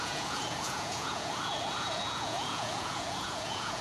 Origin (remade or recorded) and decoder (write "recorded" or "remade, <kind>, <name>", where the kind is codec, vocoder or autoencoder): remade, vocoder, Vocos